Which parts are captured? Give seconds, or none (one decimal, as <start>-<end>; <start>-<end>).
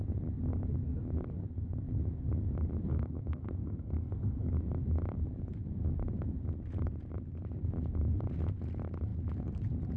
0.0-2.9; 4.5-10.0